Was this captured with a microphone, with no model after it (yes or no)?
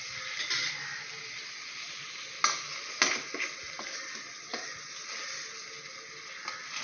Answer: yes